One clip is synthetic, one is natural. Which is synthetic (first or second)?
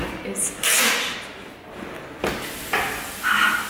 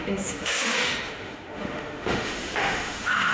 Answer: second